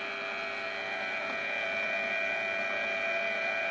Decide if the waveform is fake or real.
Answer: real